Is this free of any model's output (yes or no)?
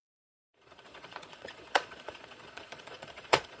no